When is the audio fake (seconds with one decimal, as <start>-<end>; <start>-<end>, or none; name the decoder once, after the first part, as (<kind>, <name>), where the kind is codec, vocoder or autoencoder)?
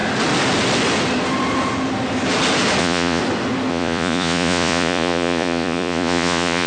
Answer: 2.8-3.2 (vocoder, Vocos); 3.7-6.7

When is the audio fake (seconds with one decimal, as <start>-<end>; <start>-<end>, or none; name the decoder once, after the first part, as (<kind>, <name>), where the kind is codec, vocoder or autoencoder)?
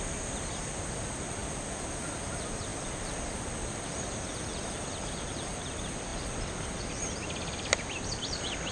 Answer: none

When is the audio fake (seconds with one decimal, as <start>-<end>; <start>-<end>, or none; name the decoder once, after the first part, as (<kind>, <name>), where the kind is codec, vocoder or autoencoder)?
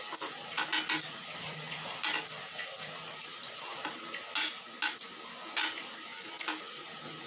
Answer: none